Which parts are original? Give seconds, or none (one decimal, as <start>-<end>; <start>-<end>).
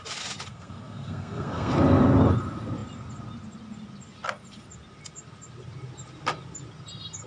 0.0-0.5; 1.7-7.3